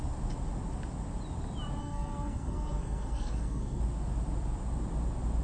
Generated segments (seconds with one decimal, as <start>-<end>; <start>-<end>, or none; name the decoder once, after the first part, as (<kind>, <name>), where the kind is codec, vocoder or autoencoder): 1.8-3.8 (codec, SNAC)